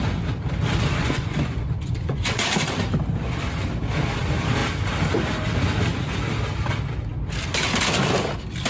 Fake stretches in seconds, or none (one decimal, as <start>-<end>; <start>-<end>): 1.0-2.4